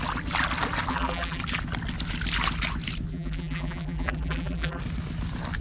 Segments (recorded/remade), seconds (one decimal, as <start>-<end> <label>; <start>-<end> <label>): 0.0-0.9 recorded; 0.9-1.4 remade; 1.4-3.1 recorded; 3.1-4.8 remade; 4.8-5.6 recorded